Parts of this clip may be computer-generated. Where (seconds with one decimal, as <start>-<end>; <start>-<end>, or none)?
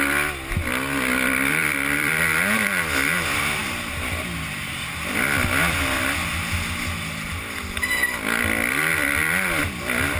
1.6-2.2; 7.3-7.9